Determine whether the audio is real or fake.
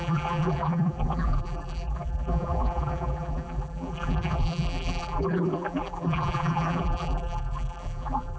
fake